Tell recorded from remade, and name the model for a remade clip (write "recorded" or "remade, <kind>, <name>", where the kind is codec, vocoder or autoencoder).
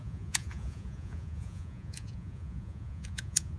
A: remade, vocoder, Vocos